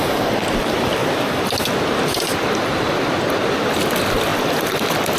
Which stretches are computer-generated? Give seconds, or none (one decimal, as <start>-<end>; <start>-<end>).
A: 0.0-1.0; 1.8-5.2